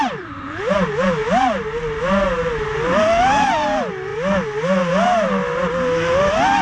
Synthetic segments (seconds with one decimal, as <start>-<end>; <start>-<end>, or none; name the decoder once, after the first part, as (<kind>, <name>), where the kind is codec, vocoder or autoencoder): 0.0-1.2 (vocoder, BigVGAN v2); 3.2-4.1; 4.9-5.4